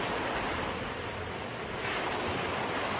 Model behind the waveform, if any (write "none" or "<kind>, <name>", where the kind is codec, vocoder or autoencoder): none